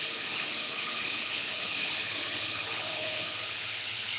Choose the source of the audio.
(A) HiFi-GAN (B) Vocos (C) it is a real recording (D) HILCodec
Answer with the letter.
D